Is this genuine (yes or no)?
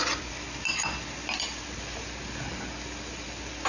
yes